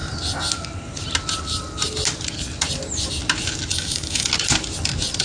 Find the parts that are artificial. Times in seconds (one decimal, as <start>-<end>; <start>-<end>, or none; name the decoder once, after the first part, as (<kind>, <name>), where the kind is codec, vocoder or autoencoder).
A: 3.7-4.3 (autoencoder, DAC-VAE)